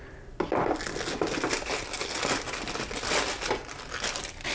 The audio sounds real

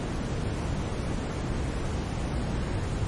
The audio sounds real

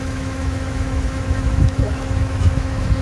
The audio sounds fake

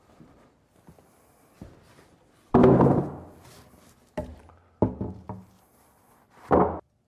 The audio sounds real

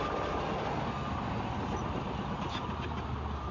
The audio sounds real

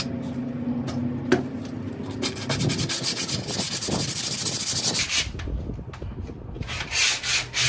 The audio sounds real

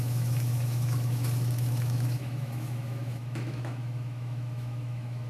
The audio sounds fake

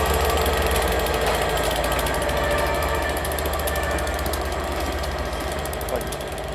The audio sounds real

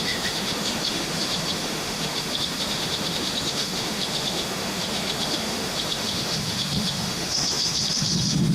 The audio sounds fake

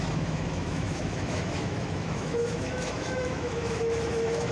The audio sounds fake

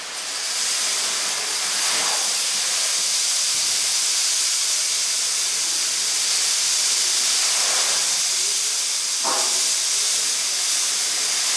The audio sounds real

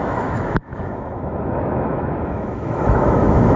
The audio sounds fake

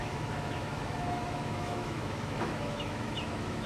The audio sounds fake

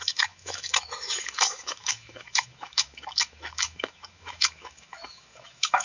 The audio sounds fake